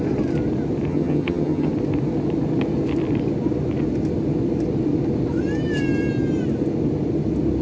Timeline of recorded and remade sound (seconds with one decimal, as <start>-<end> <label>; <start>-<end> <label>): 0.0-0.9 recorded; 0.9-1.7 remade; 1.7-7.6 recorded